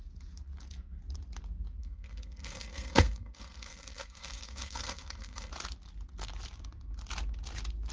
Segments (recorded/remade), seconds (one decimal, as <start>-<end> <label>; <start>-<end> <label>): 0.0-1.8 recorded; 1.8-5.5 remade; 5.5-7.9 recorded